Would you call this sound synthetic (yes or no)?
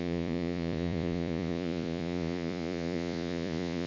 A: yes